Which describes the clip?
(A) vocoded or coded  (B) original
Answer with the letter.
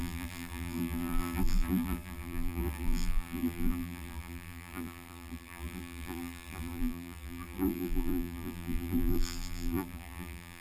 A